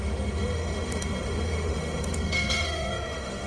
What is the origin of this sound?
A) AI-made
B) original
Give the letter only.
A